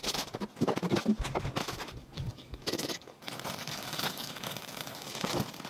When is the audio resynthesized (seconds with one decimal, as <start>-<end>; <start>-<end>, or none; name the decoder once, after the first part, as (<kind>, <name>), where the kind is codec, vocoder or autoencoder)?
2.0-3.2 (codec, DAC); 3.6-5.3